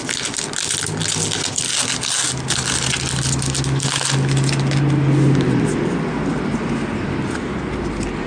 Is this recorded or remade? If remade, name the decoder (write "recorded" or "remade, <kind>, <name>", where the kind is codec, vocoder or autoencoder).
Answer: recorded